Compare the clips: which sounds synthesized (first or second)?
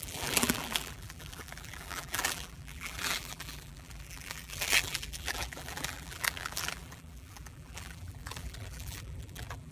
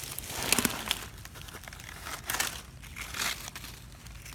first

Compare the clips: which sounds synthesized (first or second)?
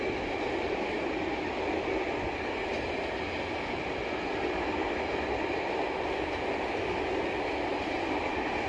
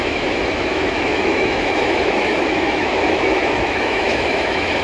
second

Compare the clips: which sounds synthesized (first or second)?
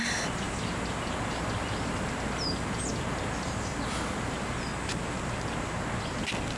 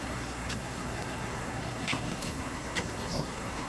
second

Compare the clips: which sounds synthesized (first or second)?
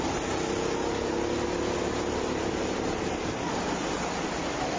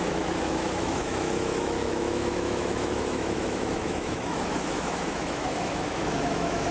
second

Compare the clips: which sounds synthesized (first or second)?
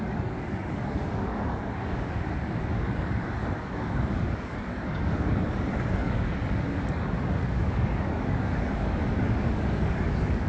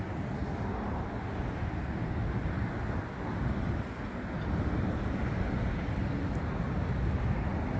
first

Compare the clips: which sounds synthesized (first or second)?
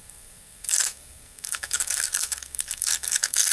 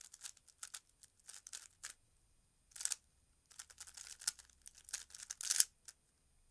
first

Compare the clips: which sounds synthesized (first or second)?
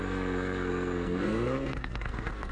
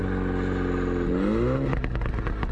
first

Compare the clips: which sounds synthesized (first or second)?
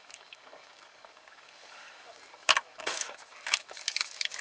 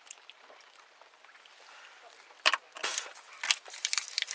first